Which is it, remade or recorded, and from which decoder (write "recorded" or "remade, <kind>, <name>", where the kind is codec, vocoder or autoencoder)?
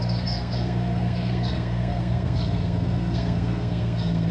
remade, codec, SNAC